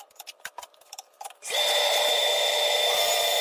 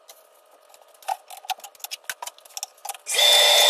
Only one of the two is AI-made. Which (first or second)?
first